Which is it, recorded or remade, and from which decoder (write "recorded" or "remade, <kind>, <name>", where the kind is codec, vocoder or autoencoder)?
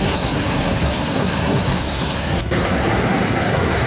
remade, codec, SNAC